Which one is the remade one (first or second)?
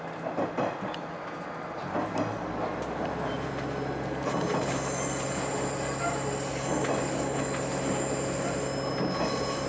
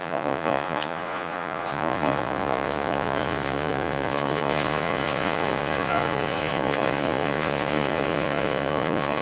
second